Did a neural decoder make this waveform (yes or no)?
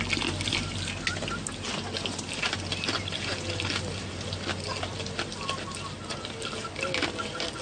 no